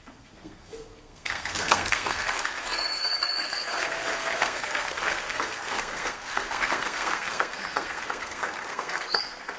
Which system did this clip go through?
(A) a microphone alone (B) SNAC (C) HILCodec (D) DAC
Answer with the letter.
B